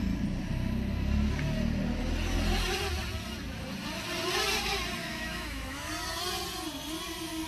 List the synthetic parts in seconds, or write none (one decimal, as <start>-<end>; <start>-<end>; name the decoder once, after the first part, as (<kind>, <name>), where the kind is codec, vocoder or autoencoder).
5.0-5.9 (autoencoder, DAC-VAE)